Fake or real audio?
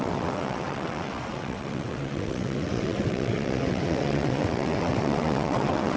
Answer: fake